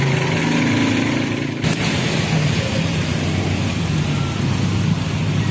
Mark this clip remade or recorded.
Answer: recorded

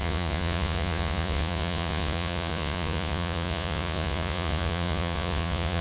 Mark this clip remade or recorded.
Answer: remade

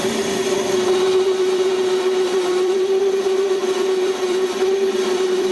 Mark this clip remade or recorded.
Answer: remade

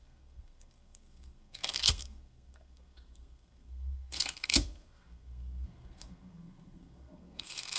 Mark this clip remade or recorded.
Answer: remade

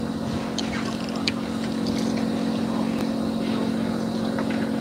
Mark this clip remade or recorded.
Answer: remade